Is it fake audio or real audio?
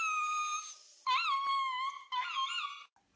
real